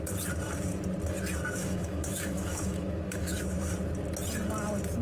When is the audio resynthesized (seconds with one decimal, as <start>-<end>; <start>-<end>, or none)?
1.6-3.4